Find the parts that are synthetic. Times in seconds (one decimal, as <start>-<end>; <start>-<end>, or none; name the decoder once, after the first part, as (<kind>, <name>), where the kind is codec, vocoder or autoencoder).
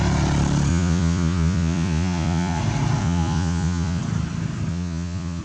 0.7-2.6 (vocoder, Vocos); 3.0-4.0; 4.7-5.4